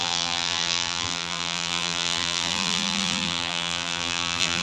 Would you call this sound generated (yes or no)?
yes